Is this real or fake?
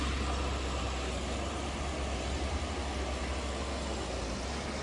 real